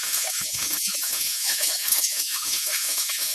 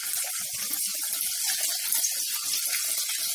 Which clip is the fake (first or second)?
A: first